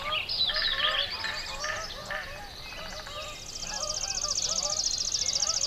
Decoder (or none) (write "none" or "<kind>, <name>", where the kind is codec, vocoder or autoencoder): none